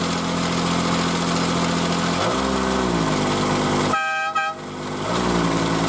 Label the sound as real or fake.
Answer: real